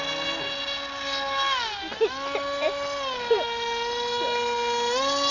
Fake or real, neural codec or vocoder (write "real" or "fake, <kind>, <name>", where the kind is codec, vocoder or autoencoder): real